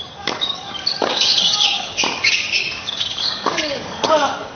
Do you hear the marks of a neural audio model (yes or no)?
yes